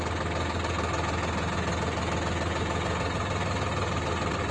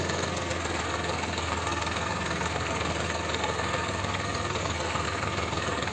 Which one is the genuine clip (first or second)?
first